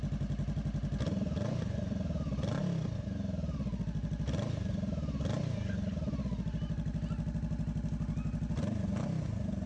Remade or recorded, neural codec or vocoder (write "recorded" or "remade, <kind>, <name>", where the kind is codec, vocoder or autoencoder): recorded